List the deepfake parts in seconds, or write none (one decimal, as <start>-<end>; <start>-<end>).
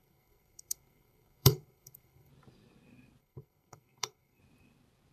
0.0-2.3; 3.2-4.4